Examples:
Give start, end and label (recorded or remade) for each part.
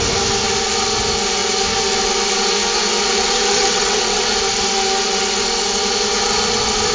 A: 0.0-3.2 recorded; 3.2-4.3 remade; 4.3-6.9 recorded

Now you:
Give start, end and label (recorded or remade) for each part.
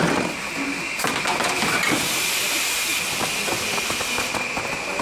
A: 0.0-5.0 recorded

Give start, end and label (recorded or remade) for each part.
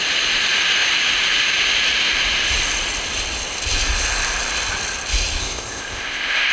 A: 0.0-5.4 recorded; 5.4-6.5 remade